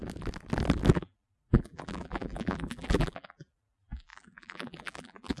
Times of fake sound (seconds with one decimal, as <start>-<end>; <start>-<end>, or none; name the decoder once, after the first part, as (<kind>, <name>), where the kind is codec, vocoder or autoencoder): 0.9-5.4 (vocoder, BigVGAN v2)